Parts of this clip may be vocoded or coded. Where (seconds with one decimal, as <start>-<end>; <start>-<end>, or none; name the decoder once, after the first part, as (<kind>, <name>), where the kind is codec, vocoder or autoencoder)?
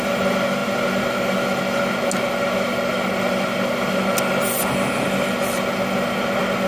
none